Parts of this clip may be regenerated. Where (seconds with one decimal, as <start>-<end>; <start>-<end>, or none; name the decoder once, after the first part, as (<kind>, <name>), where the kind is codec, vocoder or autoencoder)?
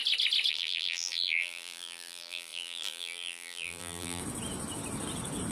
0.5-4.2 (vocoder, BigVGAN v2)